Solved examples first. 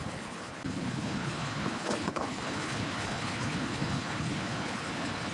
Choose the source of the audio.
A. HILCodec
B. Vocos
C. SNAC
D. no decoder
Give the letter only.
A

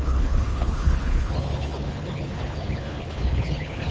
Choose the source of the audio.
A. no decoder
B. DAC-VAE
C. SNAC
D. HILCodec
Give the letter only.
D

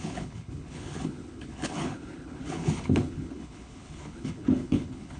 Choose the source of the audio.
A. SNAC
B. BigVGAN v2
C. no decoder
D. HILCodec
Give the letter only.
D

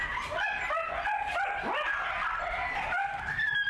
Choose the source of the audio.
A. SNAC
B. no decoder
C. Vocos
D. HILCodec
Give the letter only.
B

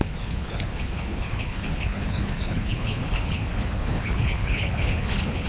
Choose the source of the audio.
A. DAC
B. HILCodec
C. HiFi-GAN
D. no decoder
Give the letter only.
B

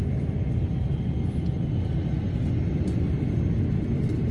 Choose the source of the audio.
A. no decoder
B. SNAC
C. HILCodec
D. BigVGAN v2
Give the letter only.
A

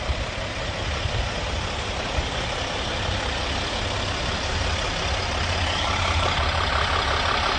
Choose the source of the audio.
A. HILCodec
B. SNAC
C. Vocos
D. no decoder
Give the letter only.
D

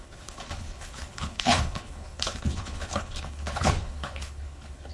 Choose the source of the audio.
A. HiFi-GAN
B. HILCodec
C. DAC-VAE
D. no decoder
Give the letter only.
B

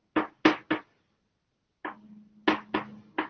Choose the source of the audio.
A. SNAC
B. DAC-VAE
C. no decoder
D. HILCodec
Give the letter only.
C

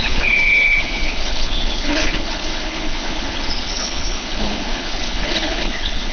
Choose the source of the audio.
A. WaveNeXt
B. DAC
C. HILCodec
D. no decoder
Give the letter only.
C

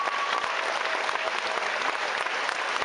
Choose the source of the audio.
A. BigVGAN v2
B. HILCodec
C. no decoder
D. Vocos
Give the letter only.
C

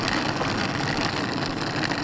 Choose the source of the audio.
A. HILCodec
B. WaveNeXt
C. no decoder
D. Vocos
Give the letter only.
C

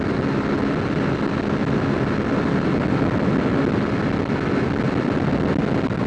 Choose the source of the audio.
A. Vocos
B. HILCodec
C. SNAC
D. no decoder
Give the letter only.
D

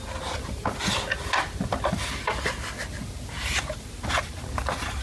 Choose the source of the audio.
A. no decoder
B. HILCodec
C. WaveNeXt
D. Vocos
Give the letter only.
A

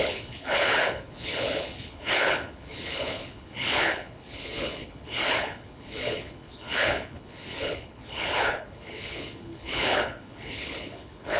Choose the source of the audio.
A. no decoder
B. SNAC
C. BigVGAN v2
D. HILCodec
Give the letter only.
D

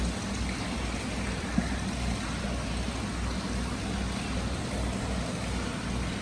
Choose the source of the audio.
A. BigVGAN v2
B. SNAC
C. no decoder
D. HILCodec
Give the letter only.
C